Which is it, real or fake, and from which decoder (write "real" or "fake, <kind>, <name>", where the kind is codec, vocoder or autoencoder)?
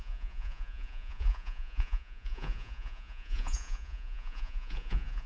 fake, vocoder, Vocos